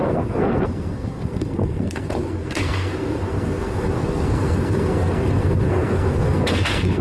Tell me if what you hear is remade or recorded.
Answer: remade